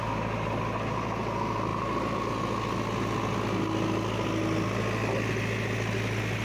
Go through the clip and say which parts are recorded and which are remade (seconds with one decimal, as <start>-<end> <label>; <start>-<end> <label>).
0.0-6.4 recorded